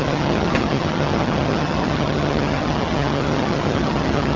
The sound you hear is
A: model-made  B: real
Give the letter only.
A